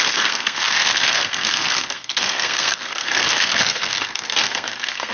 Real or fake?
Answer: fake